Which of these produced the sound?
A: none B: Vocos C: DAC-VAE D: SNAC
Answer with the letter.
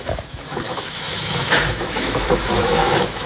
C